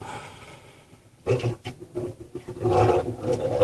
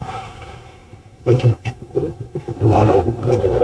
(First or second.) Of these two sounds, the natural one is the first